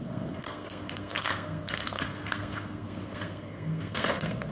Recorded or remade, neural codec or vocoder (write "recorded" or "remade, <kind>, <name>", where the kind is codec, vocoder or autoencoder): remade, codec, SNAC